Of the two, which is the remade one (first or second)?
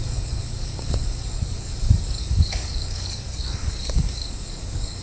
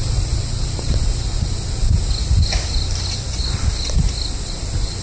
first